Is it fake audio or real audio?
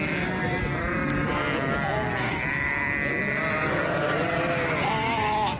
real